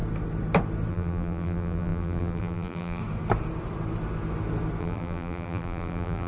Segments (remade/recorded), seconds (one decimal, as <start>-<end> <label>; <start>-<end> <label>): 0.0-0.9 recorded; 0.9-3.0 remade; 3.0-4.8 recorded; 4.8-6.3 remade